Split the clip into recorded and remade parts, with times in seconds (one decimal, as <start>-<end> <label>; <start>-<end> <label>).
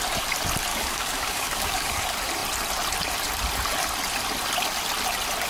0.0-0.7 recorded; 0.7-2.0 remade; 2.0-5.5 recorded